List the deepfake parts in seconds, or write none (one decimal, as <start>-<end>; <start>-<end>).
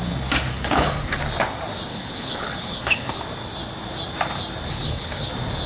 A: 0.5-1.2; 1.9-3.2; 4.7-5.3